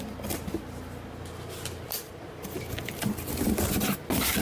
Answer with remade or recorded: recorded